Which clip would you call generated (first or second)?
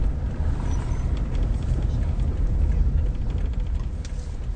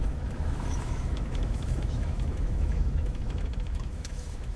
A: second